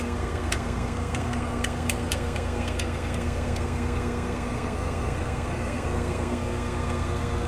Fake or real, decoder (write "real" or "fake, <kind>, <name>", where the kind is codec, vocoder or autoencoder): fake, codec, SNAC